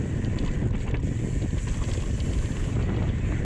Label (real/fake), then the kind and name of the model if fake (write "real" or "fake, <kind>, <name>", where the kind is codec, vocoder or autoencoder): real